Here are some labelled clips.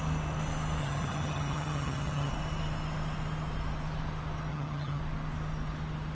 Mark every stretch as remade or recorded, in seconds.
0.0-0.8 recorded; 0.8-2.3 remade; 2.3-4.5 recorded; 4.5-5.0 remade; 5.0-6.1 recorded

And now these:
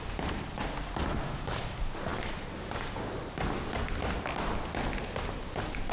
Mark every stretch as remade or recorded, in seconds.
0.0-5.9 recorded